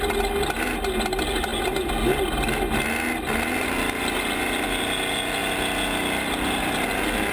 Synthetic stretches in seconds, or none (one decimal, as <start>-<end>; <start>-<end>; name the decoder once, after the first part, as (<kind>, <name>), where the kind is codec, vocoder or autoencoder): none